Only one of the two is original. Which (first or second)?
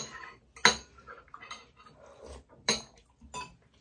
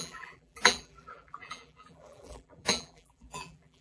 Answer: first